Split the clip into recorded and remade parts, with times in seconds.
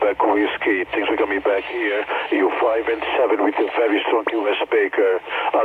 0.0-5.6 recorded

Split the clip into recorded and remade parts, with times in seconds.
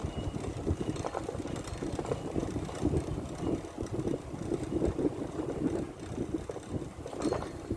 0.0-7.8 recorded